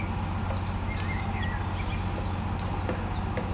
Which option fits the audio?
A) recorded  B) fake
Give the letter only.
A